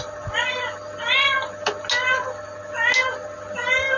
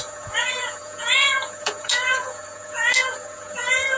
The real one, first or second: first